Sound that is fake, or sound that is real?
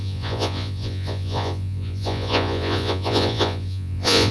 fake